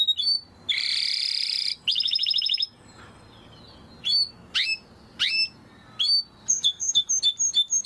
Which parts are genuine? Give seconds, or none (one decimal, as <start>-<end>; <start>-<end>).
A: 0.0-6.5; 7.1-7.9